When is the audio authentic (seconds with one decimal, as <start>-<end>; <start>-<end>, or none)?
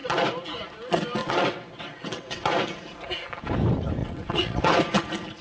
0.0-1.2; 2.5-4.0; 4.8-5.4